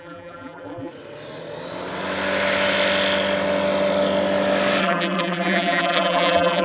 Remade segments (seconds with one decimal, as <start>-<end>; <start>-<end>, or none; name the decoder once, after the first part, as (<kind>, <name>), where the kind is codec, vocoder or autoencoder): 0.0-0.9 (vocoder, BigVGAN v2); 4.8-6.6